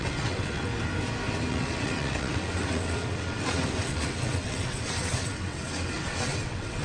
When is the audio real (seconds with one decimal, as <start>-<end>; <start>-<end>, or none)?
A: 0.7-1.5